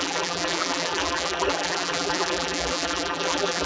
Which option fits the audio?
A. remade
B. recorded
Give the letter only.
A